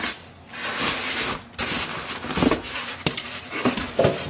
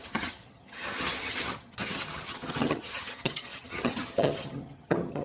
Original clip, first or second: first